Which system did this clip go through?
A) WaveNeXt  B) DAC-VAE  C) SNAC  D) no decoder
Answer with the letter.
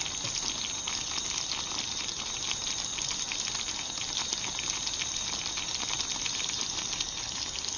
D